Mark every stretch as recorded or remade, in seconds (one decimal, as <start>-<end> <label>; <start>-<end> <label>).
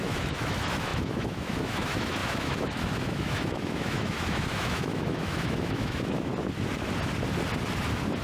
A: 0.0-6.3 remade; 6.3-8.2 recorded